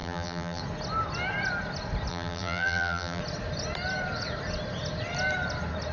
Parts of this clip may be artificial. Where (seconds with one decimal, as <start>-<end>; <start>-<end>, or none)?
0.0-0.6; 2.1-3.2